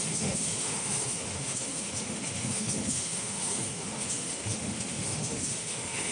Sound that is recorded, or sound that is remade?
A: remade